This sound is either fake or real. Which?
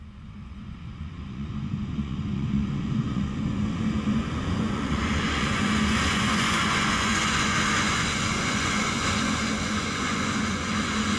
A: fake